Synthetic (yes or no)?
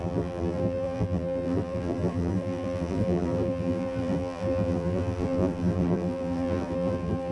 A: yes